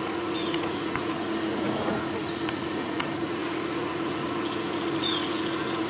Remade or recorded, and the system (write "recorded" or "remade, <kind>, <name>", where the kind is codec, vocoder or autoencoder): remade, vocoder, Vocos